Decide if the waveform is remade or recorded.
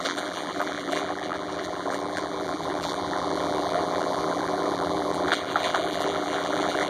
remade